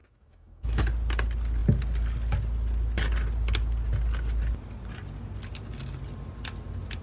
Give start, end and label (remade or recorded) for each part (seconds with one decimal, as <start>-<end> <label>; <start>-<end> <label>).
0.0-0.8 remade; 0.8-7.0 recorded